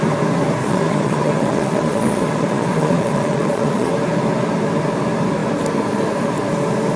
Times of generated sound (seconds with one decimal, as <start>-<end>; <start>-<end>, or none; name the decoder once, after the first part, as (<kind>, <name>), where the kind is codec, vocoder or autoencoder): 0.6-3.9 (vocoder, Vocos)